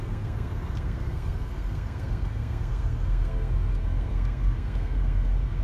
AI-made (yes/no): yes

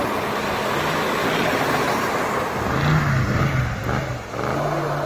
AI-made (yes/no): no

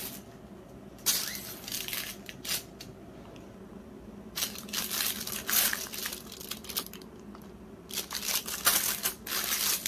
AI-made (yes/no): no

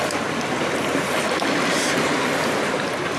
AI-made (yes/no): no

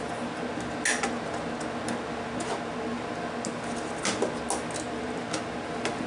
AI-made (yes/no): no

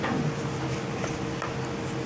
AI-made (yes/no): no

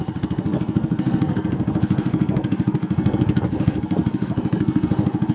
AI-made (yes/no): yes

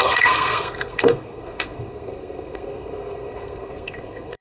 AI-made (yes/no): yes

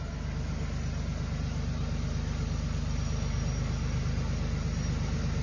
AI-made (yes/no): no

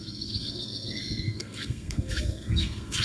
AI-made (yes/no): yes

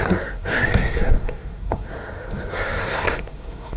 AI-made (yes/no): yes